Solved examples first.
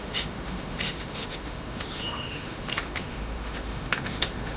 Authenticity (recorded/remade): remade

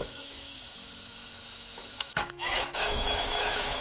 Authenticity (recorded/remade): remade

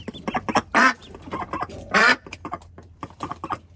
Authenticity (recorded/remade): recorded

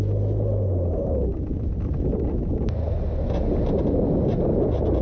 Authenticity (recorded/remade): recorded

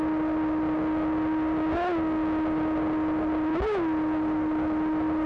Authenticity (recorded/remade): recorded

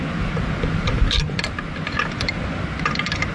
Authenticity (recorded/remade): recorded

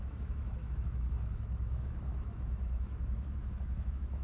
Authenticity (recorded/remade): remade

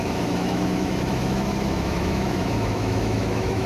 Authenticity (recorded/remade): remade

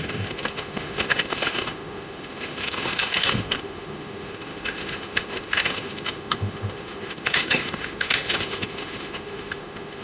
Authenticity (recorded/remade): remade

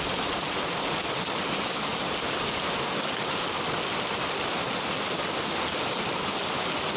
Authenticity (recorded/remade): recorded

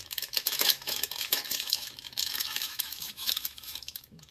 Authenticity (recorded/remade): remade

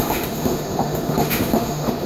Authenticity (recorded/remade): remade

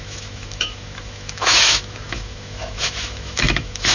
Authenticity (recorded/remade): remade